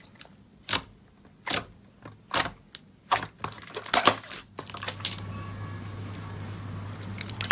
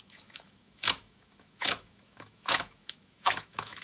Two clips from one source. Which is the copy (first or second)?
second